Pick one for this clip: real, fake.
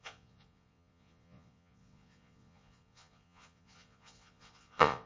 fake